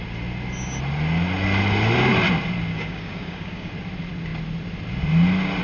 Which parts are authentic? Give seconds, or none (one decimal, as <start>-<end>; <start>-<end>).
0.0-2.7; 3.7-5.6